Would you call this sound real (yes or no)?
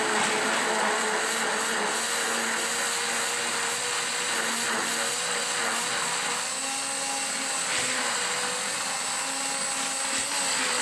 yes